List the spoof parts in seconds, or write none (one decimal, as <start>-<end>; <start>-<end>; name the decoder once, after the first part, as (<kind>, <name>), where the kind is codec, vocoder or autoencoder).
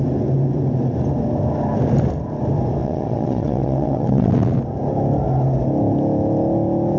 2.8-4.3 (vocoder, WaveNeXt)